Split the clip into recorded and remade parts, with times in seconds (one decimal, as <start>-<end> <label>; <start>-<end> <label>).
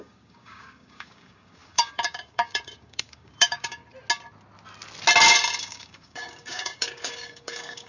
0.0-3.8 remade; 3.8-5.6 recorded; 5.6-7.9 remade